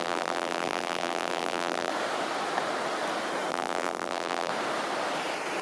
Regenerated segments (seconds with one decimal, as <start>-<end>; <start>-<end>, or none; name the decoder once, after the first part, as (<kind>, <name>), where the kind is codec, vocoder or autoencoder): 0.0-1.9 (vocoder, BigVGAN v2); 3.5-4.5